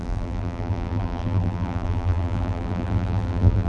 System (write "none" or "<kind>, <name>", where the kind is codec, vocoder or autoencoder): vocoder, BigVGAN v2